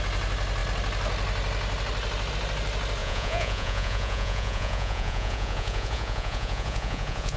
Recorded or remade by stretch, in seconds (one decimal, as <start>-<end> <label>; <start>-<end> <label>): 0.0-3.0 recorded; 3.0-7.4 remade